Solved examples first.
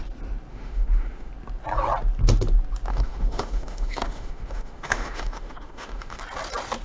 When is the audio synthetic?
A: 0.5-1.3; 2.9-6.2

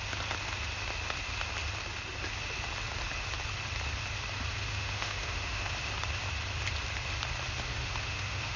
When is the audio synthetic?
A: 4.7-5.7; 7.7-8.6

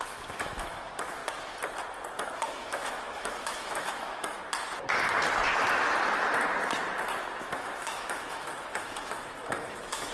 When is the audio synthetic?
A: 0.0-1.2; 2.5-4.4; 7.4-10.1

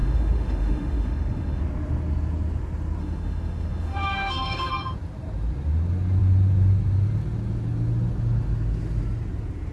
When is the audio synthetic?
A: 0.0-1.6; 3.0-4.7

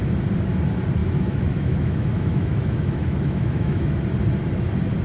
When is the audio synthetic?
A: 1.0-4.0

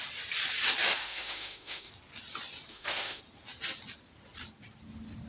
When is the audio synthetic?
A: 1.0-1.9; 2.7-3.2